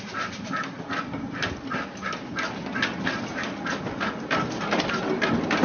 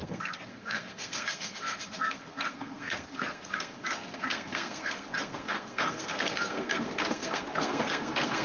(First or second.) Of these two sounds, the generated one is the second